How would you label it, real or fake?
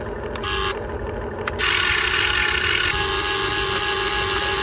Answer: real